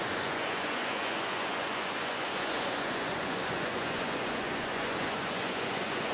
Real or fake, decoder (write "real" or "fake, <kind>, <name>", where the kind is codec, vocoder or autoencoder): fake, vocoder, Vocos